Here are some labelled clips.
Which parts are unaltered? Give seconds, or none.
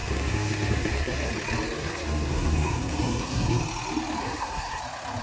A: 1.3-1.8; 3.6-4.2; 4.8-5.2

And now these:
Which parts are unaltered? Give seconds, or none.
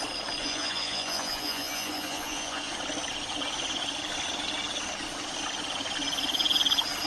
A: 0.0-0.4; 2.7-7.1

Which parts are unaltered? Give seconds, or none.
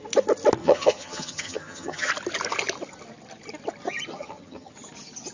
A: 0.0-0.6; 2.1-4.1; 4.7-5.3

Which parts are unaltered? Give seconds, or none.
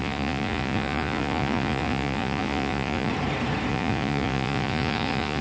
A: 3.1-3.7